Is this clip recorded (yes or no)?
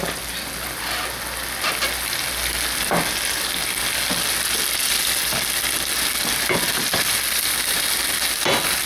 yes